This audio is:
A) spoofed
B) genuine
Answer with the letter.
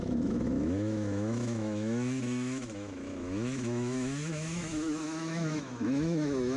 A